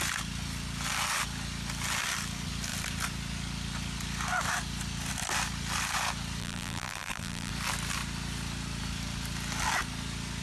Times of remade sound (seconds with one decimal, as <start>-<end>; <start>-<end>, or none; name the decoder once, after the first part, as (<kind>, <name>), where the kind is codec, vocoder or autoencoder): 6.4-7.5 (vocoder, BigVGAN v2)